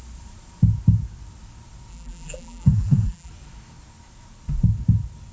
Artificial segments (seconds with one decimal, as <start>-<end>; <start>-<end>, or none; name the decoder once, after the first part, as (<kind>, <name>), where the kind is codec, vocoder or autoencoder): 1.9-3.3 (vocoder, BigVGAN v2)

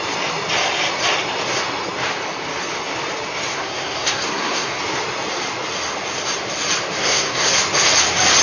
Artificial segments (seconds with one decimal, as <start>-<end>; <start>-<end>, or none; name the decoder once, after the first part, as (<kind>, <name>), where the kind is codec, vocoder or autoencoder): 3.5-4.8 (codec, SNAC); 7.0-7.5

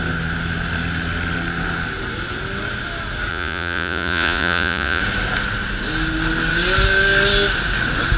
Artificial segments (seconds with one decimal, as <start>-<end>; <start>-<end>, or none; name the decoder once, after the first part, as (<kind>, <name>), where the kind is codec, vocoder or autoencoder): 3.3-5.0 (vocoder, Vocos)

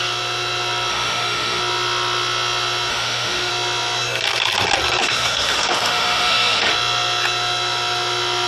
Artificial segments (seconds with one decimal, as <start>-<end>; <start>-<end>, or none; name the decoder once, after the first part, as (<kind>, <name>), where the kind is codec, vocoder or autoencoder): 0.9-1.6 (autoencoder, DAC-VAE); 2.9-3.5; 5.0-6.7

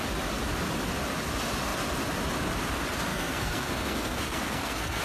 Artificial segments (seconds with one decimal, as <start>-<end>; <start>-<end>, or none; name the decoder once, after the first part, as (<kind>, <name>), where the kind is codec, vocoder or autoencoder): 3.1-5.0 (codec, SNAC)

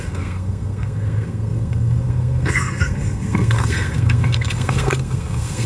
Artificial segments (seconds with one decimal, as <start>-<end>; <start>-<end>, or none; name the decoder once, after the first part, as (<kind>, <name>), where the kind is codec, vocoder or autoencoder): 0.0-5.7 (codec, SNAC)